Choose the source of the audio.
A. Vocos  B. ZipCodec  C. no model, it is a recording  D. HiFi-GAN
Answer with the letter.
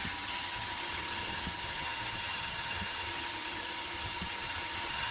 D